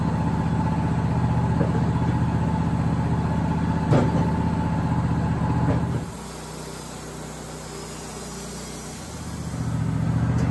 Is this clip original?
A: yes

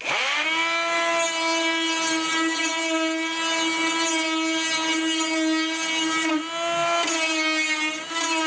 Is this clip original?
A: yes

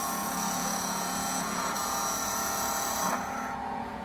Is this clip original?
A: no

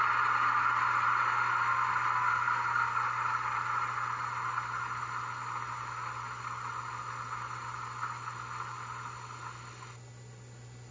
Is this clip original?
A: yes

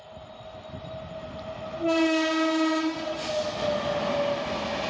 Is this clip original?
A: yes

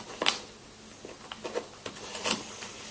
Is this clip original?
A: yes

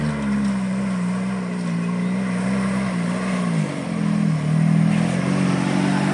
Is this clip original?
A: yes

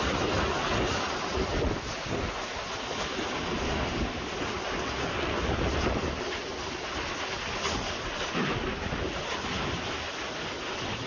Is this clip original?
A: yes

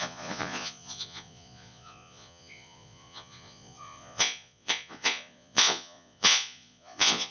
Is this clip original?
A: no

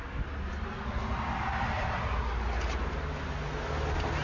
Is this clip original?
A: yes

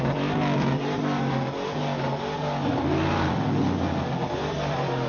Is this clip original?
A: yes